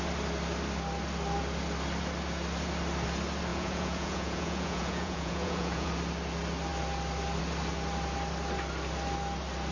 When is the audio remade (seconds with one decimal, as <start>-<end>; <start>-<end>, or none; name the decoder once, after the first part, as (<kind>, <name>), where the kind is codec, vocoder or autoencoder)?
3.5-5.9 (vocoder, Vocos)